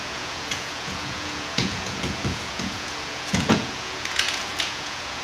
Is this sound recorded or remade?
remade